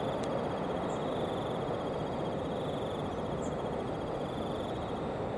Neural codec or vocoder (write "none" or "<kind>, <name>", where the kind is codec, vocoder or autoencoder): none